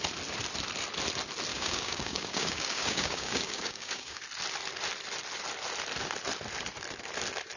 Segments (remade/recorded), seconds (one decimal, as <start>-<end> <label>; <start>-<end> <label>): 0.0-1.5 recorded; 1.5-4.2 remade; 4.2-7.6 recorded